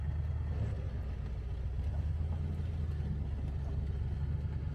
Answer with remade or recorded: recorded